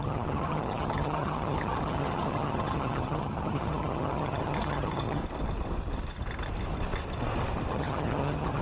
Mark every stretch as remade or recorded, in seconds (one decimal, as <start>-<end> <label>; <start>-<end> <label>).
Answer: 0.0-5.2 remade; 5.2-7.7 recorded; 7.7-8.6 remade